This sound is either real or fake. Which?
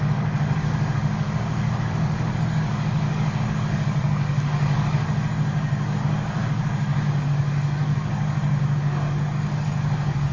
fake